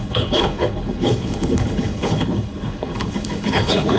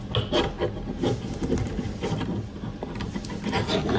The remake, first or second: first